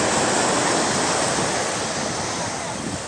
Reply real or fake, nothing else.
real